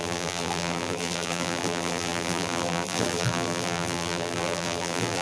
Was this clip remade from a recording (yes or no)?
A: yes